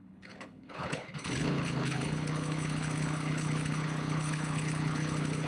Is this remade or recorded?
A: remade